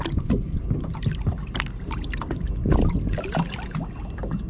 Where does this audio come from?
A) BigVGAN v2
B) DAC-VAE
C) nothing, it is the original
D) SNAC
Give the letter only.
C